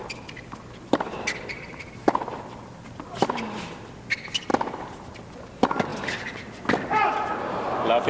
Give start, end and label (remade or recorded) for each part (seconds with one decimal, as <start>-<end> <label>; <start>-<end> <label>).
0.0-8.1 recorded